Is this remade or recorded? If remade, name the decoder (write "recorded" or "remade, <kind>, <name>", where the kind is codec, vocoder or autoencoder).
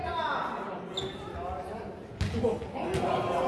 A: recorded